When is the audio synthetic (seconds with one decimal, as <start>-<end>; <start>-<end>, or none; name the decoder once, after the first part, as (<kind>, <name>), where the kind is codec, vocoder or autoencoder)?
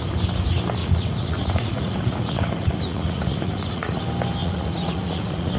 0.8-4.0 (vocoder, Vocos); 4.4-5.6